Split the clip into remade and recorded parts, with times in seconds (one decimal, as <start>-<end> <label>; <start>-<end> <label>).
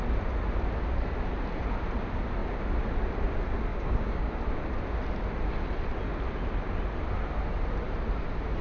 0.0-3.7 recorded; 3.7-4.4 remade; 4.4-8.6 recorded